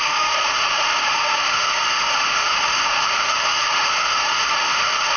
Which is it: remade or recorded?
remade